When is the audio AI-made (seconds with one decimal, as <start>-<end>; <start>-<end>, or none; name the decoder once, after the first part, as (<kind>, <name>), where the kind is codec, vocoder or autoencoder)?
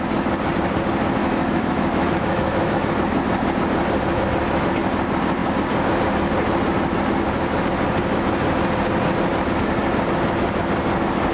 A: 1.2-2.9 (autoencoder, DAC-VAE)